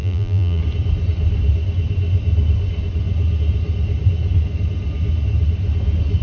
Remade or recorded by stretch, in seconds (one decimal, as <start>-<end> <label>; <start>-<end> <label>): 0.0-0.6 remade; 0.6-6.2 recorded